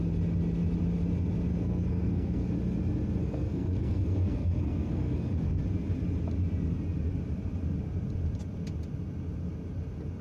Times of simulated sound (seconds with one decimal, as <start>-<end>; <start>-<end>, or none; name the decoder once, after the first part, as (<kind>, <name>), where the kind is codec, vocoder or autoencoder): 1.5-2.5 (codec, SNAC); 3.2-5.6